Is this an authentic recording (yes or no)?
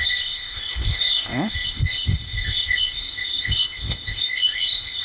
no